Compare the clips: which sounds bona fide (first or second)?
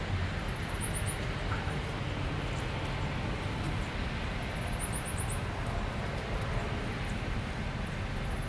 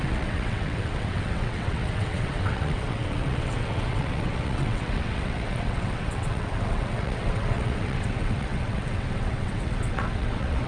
first